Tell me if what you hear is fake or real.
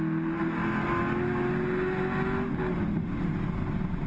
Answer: real